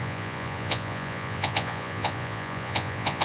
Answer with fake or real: fake